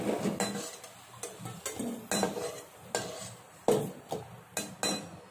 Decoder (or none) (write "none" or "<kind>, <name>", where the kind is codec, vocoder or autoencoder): none